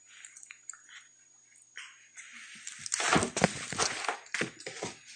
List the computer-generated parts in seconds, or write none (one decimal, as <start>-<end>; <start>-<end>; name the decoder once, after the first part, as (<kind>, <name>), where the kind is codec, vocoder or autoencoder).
none